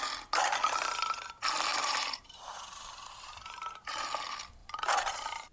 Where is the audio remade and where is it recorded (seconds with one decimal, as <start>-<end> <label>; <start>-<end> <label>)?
0.0-1.7 recorded; 1.7-4.1 remade; 4.1-4.6 recorded; 4.6-5.5 remade